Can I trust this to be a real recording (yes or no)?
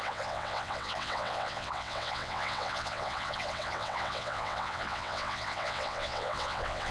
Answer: no